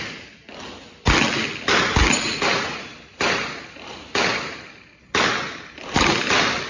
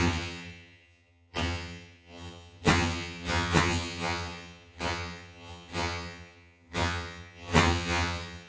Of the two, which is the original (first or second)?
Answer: first